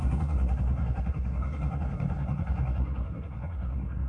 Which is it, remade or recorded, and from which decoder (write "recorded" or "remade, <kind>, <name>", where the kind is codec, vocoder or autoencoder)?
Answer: remade, codec, SNAC